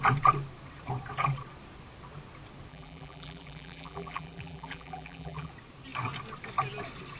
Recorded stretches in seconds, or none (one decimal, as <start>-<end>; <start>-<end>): 0.0-2.7; 5.5-7.2